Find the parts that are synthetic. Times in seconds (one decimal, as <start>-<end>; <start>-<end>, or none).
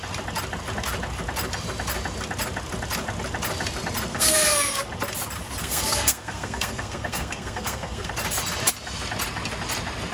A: 4.1-4.8; 5.6-8.1